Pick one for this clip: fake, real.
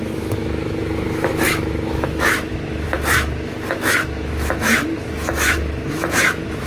fake